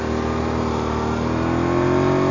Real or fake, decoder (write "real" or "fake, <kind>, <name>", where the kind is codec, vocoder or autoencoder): real